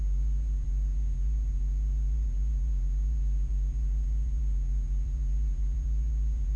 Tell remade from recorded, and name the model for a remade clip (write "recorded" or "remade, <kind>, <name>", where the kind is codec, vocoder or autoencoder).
remade, vocoder, BigVGAN v2